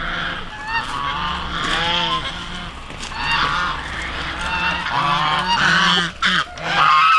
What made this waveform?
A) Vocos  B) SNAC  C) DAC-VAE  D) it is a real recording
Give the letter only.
D